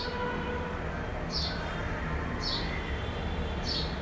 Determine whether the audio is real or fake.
real